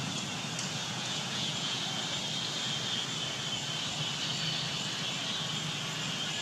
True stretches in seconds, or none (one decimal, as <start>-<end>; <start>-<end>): 0.0-0.8; 1.8-6.4